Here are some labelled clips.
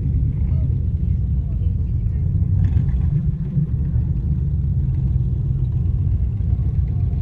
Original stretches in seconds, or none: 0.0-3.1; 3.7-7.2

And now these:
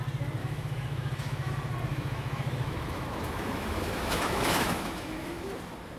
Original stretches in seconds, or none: 0.0-0.4; 1.5-1.9; 5.5-6.0

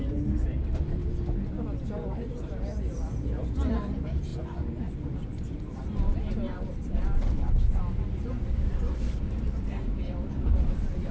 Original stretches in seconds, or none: 1.0-2.3; 4.3-4.8

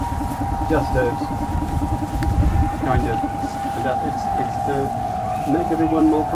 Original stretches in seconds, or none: none

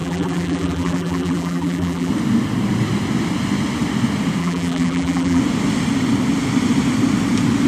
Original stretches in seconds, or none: 2.1-4.4; 5.4-7.7